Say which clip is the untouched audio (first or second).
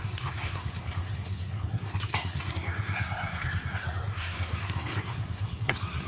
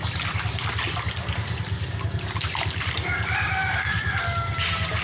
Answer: second